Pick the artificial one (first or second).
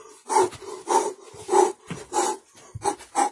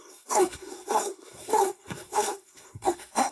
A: second